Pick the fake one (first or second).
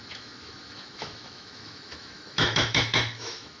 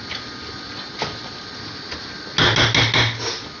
first